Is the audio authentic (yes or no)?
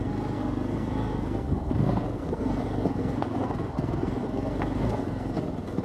no